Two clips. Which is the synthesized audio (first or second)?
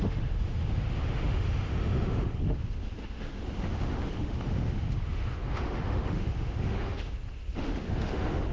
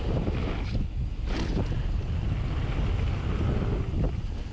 first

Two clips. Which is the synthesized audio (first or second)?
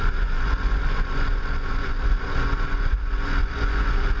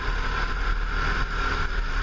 first